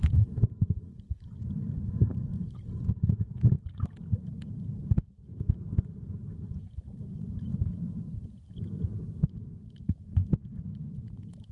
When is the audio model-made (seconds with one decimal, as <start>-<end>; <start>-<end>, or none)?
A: none